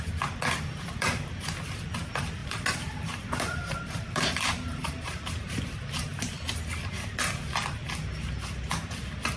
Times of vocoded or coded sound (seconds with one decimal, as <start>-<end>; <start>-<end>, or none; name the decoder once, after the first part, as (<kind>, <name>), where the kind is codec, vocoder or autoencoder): 2.4-5.6 (vocoder, BigVGAN v2)